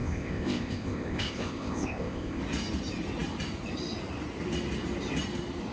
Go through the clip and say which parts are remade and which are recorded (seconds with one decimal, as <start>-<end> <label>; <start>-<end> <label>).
0.0-2.4 remade; 2.4-5.7 recorded